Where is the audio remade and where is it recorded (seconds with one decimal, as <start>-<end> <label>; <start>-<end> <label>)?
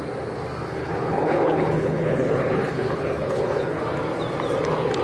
0.0-0.8 recorded; 0.8-3.8 remade; 3.8-5.0 recorded